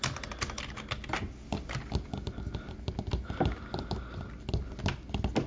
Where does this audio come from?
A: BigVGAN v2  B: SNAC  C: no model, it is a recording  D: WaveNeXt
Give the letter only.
C